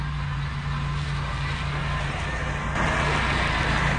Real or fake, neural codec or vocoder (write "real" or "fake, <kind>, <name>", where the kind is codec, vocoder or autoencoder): real